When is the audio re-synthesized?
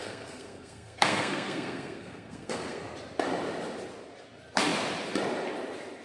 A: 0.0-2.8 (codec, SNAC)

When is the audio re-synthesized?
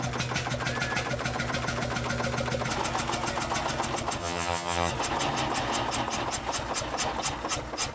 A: 4.2-4.9 (vocoder, HiFi-GAN)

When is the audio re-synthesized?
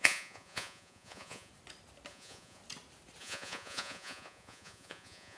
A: 0.0-1.5 (vocoder, Vocos); 2.1-2.6; 3.2-5.4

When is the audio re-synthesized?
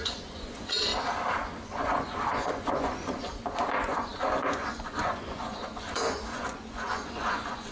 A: 0.0-0.9 (vocoder, Vocos); 1.6-7.7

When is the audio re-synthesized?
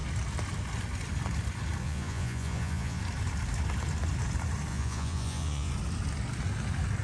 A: 1.8-3.0 (vocoder, Vocos); 4.7-5.7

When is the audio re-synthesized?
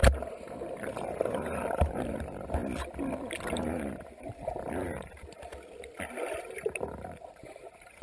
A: 0.0-2.6 (vocoder, BigVGAN v2); 3.5-5.5; 6.3-8.0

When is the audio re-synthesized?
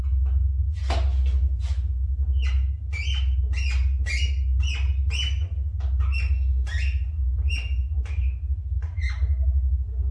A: none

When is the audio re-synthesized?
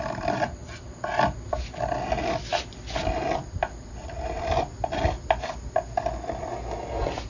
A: none